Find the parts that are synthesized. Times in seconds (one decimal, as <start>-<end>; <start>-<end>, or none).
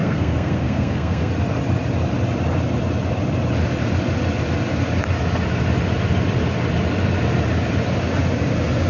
0.0-1.3